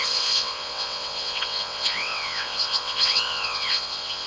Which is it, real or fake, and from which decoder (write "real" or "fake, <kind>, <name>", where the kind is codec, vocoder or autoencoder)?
fake, vocoder, WaveNeXt